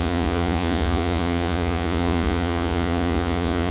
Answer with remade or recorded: remade